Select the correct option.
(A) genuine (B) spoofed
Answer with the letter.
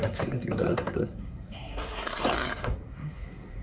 B